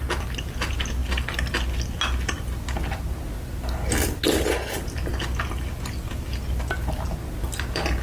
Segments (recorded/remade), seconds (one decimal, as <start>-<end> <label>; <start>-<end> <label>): 0.0-8.0 recorded